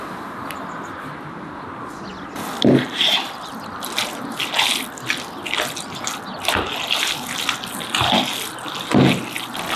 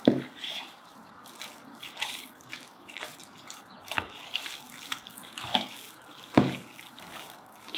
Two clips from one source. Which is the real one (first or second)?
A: first